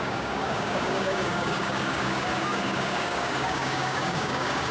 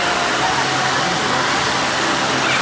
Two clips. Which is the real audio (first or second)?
second